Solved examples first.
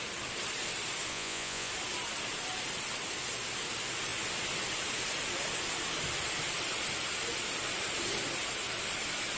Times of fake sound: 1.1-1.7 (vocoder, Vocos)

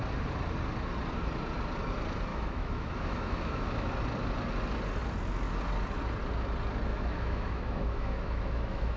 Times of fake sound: 2.3-3.9 (autoencoder, DAC-VAE); 6.9-9.0

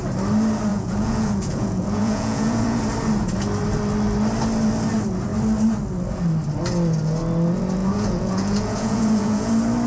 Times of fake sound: 0.7-2.8 (vocoder, Vocos); 7.8-9.5

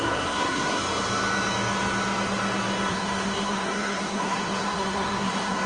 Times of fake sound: 0.0-0.8 (codec, SNAC); 2.9-5.7

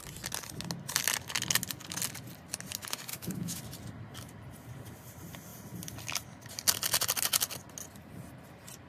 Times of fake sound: 3.1-3.6 (autoencoder, DAC-VAE)

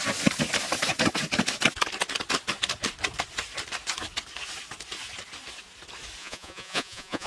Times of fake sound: 6.2-7.3 (vocoder, Vocos)

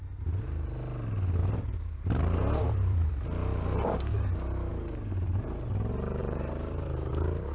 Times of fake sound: 1.4-3.1 (vocoder, BigVGAN v2); 4.7-5.7; 6.2-7.1

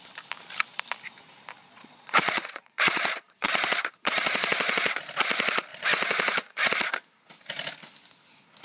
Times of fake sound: 1.6-4.9 (vocoder, Vocos); 5.7-6.7